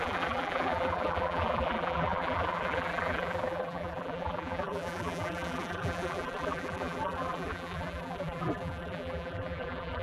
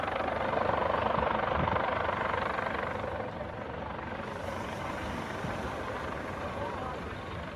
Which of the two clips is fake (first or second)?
first